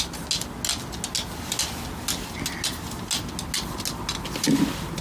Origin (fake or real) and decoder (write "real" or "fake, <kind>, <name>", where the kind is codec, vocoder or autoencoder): real